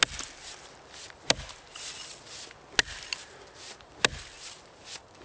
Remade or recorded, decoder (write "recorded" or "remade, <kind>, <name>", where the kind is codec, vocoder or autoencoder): recorded